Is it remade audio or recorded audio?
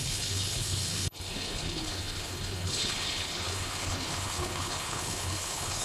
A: remade